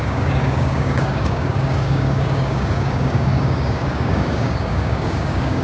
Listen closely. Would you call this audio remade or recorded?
remade